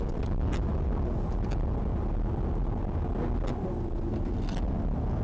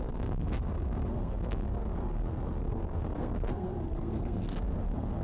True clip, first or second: first